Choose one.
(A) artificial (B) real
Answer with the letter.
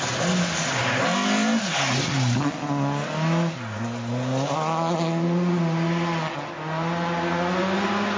B